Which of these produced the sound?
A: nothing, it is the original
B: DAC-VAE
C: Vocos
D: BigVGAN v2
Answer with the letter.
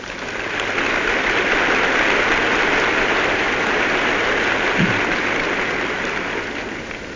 A